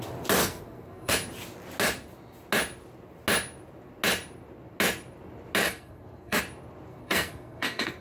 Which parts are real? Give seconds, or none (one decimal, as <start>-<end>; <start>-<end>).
0.0-0.4; 1.1-5.6; 6.4-6.9